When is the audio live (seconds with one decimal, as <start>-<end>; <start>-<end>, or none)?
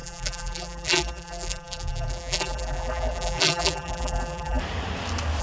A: 4.6-5.4